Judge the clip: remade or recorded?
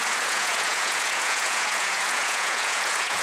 remade